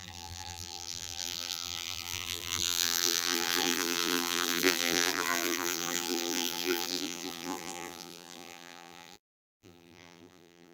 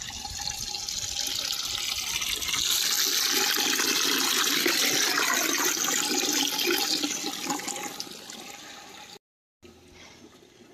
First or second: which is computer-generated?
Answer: first